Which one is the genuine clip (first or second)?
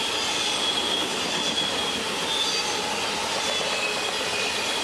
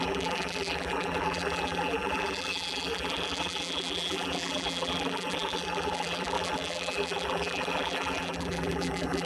first